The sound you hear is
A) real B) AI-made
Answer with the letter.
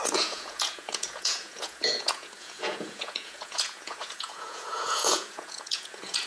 B